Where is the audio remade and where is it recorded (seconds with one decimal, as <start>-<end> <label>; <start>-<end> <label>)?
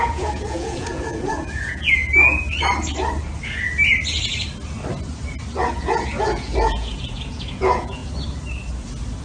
0.0-2.0 remade; 2.0-5.7 recorded; 5.7-8.0 remade; 8.0-9.2 recorded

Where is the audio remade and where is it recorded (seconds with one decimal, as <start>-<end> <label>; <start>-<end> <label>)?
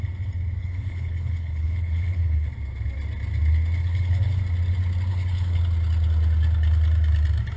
0.0-0.6 recorded; 0.6-2.5 remade; 2.5-3.8 recorded; 3.8-4.4 remade; 4.4-5.1 recorded; 5.1-5.6 remade; 5.6-7.6 recorded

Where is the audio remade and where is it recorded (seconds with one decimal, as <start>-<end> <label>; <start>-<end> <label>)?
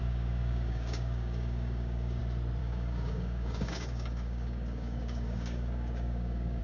0.0-2.2 remade; 2.2-2.6 recorded; 2.6-6.6 remade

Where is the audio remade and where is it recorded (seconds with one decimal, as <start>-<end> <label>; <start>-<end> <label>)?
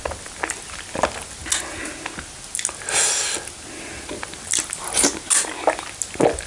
0.0-6.5 recorded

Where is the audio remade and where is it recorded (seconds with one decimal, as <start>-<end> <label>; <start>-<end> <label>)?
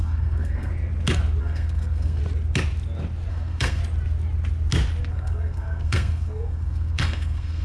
0.0-0.7 remade; 0.7-1.4 recorded; 1.4-2.2 remade; 2.2-3.3 recorded; 3.3-3.8 remade; 3.8-5.1 recorded; 5.1-7.6 remade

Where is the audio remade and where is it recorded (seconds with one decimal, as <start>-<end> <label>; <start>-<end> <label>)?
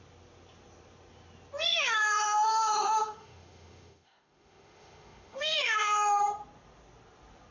0.0-1.7 recorded; 1.7-6.2 remade; 6.2-7.5 recorded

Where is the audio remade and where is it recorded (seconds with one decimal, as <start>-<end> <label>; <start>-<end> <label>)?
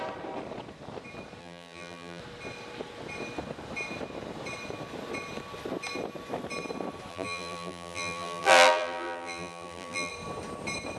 0.0-1.4 recorded; 1.4-2.2 remade; 2.2-7.1 recorded; 7.1-10.1 remade; 10.1-11.0 recorded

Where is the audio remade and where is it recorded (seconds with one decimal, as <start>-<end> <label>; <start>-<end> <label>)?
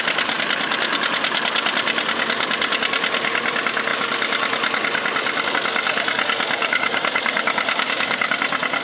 0.0-6.6 recorded; 6.6-8.3 remade; 8.3-8.8 recorded